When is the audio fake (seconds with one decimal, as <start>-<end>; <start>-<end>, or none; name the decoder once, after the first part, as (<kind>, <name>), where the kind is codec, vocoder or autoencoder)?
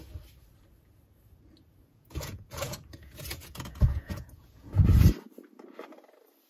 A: 1.9-4.7 (vocoder, Vocos)